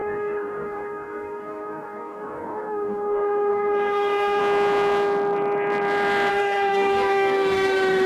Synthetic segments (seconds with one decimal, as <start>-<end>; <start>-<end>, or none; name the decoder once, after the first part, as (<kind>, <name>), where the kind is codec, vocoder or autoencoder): 0.0-4.4 (codec, DAC); 6.3-8.1